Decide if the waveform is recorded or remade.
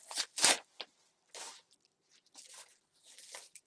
recorded